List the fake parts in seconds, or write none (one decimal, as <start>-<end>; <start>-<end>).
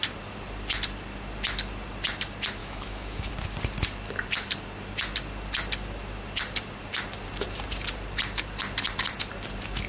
2.6-3.3